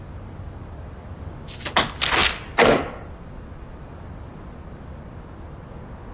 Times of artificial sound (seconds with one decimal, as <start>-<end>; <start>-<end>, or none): none